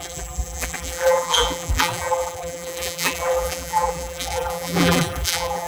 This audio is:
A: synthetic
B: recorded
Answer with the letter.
A